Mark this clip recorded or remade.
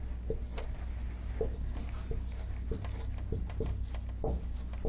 recorded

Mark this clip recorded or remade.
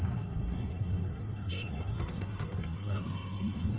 remade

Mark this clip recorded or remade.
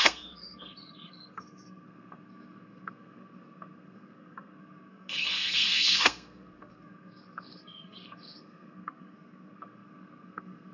remade